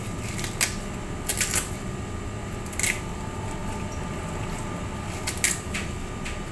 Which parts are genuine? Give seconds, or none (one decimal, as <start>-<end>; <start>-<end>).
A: 0.0-1.3; 1.9-6.5